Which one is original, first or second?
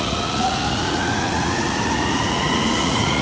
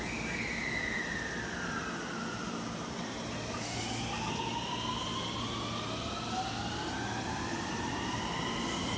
second